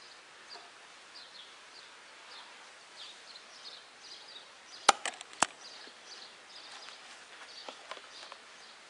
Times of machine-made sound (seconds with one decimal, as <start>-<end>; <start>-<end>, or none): none

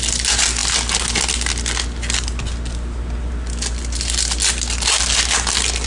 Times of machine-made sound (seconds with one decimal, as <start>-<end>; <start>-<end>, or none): none

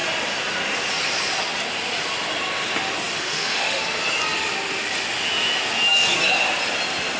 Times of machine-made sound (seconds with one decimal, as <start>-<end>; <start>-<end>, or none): 3.1-3.8